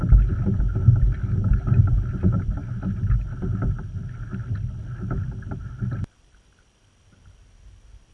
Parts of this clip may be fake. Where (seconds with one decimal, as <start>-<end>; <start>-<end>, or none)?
none